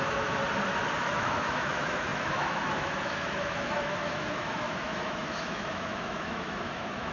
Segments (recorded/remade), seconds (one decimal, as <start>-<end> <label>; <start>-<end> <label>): 0.0-0.4 remade; 0.4-1.0 recorded; 1.0-7.1 remade